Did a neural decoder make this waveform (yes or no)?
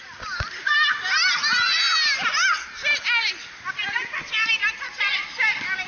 no